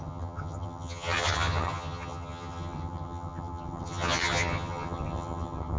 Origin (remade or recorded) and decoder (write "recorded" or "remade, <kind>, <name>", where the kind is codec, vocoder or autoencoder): remade, vocoder, HiFi-GAN